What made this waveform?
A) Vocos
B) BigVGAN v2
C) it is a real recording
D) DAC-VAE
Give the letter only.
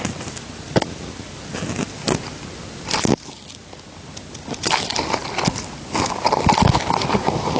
C